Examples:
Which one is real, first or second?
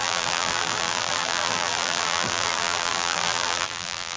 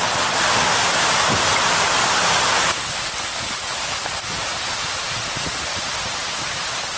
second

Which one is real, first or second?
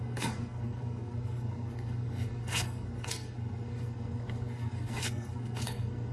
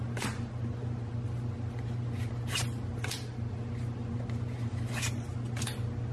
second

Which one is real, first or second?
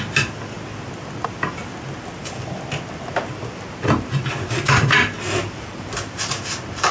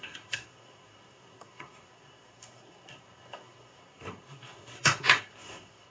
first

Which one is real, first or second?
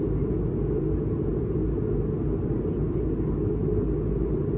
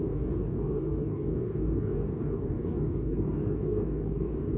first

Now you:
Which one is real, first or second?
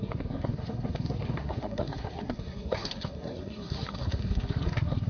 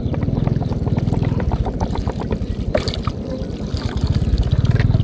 second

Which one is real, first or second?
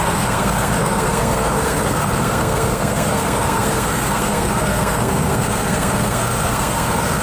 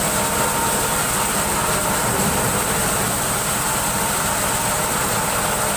second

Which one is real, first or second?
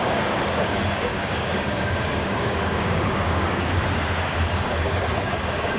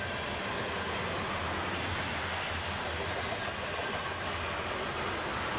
second